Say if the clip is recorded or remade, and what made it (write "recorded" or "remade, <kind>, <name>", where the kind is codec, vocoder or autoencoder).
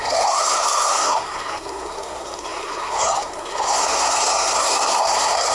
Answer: remade, codec, SNAC